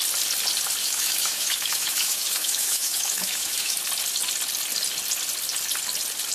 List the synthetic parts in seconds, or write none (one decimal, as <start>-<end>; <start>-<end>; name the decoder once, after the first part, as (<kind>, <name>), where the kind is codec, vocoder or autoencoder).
0.8-3.8 (autoencoder, DAC-VAE)